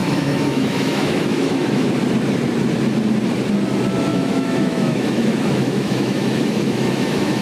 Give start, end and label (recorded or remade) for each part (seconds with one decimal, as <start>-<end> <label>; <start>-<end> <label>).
0.0-1.9 remade; 1.9-4.1 recorded; 4.1-7.4 remade